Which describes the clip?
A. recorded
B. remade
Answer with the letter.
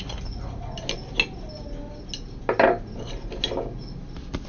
A